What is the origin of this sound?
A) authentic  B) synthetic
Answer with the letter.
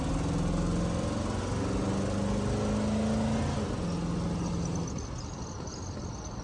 A